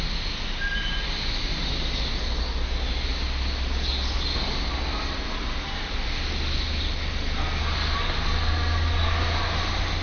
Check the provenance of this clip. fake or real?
real